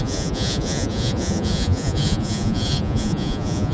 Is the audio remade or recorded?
remade